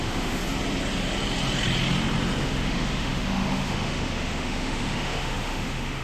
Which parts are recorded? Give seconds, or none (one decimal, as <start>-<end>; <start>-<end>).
0.4-2.4